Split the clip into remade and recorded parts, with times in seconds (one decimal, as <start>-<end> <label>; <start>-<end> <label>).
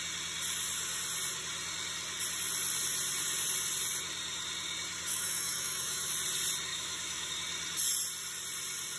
0.0-5.1 recorded; 5.1-6.1 remade; 6.1-6.7 recorded; 6.7-7.3 remade; 7.3-9.0 recorded